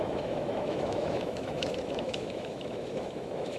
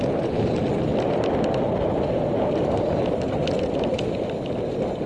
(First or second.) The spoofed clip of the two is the first